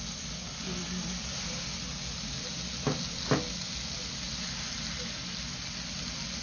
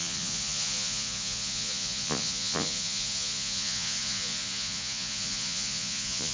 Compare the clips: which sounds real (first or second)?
first